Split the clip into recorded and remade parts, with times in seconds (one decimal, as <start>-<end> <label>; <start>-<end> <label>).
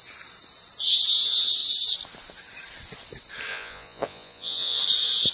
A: 0.0-3.5 recorded; 3.5-4.8 remade; 4.8-5.3 recorded